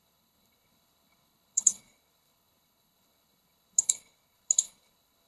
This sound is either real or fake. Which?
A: fake